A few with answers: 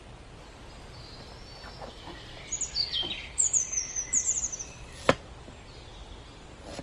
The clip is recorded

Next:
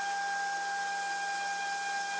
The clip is recorded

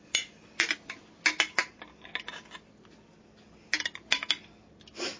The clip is recorded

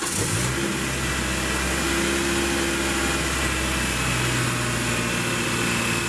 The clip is recorded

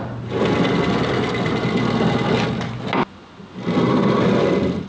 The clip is recorded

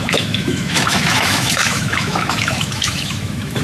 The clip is remade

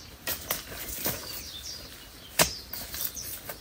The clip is recorded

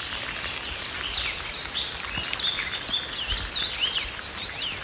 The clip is recorded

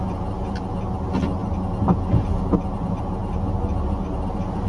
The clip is recorded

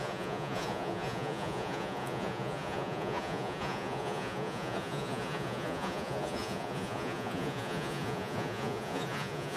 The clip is remade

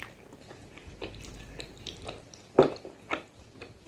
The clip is recorded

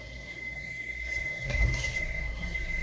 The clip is remade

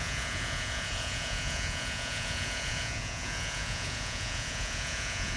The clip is remade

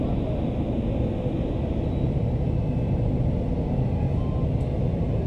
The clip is recorded